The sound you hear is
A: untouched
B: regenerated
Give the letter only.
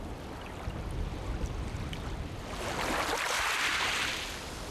A